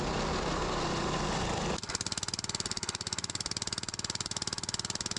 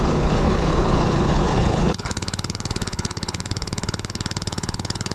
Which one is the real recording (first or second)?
first